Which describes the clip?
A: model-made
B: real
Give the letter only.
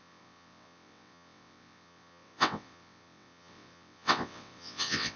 A